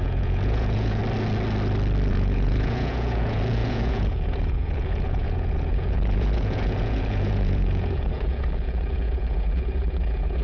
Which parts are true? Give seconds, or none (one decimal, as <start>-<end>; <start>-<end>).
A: 1.0-2.1

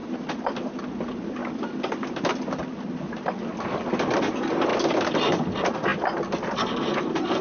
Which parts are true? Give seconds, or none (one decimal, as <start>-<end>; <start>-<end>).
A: 0.0-7.4

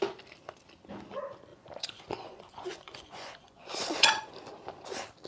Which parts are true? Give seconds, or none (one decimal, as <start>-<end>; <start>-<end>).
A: 0.0-1.5; 4.3-5.3

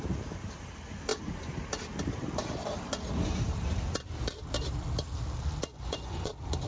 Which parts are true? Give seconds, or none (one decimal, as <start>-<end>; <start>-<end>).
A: 0.0-5.7; 6.3-6.7

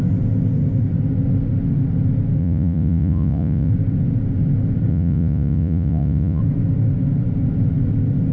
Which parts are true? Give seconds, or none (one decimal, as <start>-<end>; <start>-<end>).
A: 0.0-2.4; 3.7-4.9; 6.4-8.3

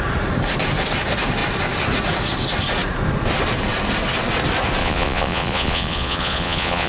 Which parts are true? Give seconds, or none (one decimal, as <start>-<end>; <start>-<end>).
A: 0.0-4.8

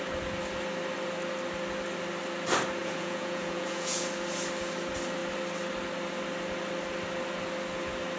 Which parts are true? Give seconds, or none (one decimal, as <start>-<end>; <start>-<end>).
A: 0.0-2.8; 4.1-8.2